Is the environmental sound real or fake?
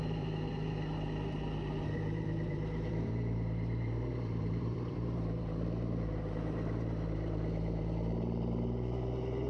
fake